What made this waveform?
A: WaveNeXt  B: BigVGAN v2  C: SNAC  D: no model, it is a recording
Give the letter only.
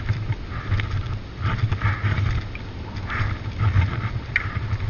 D